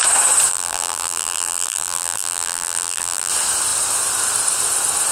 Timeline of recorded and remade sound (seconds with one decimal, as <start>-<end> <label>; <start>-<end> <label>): 0.0-0.5 recorded; 0.5-3.3 remade; 3.3-5.1 recorded